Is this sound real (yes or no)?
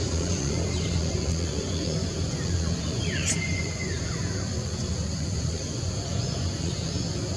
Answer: no